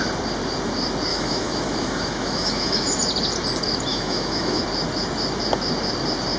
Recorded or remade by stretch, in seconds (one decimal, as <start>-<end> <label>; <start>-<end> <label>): 0.0-1.1 recorded; 1.1-3.0 remade; 3.0-3.9 recorded; 3.9-4.6 remade; 4.6-6.4 recorded